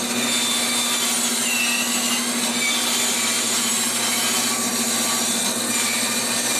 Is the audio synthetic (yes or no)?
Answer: no